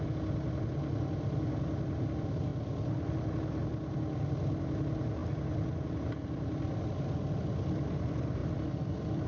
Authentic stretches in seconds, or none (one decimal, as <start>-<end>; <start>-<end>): 0.0-2.5; 3.3-5.2; 6.0-8.4